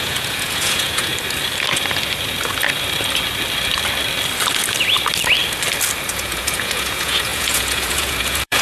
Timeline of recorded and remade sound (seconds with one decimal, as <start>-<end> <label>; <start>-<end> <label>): 0.0-1.1 remade; 1.1-6.1 recorded; 6.1-8.6 remade